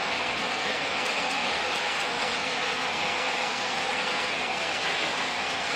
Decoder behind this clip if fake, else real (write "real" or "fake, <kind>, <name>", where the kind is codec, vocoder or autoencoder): fake, codec, SNAC